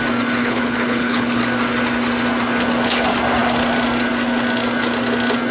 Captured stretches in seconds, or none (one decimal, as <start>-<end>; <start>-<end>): 0.0-0.4; 1.4-5.5